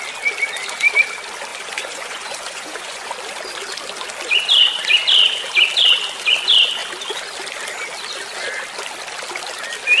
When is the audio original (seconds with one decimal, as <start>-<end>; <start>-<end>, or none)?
0.0-1.5; 3.1-10.0